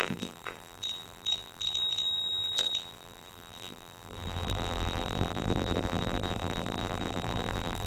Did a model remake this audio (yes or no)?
yes